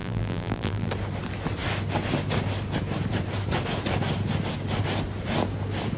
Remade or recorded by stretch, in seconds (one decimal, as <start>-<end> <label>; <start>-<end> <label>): 0.0-0.9 remade; 0.9-6.0 recorded